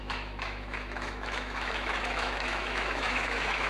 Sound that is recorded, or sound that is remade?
remade